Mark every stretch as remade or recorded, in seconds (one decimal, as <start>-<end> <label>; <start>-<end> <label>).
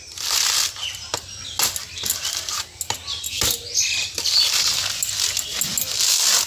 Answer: 0.0-6.5 recorded